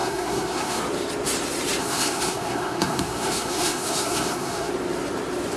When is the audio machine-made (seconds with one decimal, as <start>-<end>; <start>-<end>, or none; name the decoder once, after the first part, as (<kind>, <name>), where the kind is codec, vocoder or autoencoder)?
0.0-0.8 (codec, SNAC); 1.8-4.7

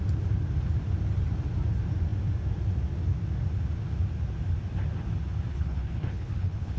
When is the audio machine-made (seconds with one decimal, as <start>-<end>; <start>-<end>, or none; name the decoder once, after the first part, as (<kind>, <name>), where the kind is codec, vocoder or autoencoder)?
5.5-6.8 (codec, HILCodec)

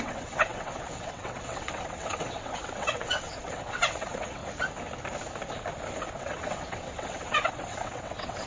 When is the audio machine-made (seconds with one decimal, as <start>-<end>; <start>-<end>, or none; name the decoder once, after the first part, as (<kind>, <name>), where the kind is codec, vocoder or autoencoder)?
0.0-4.4 (vocoder, WaveNeXt); 6.2-8.5

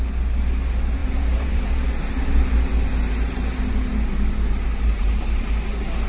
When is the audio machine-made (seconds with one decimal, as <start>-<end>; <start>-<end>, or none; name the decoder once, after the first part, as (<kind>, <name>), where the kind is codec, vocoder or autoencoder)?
1.0-1.7 (vocoder, BigVGAN v2); 4.9-5.4